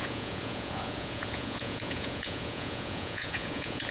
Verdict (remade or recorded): remade